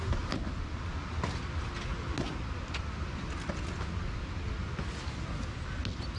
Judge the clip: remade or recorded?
recorded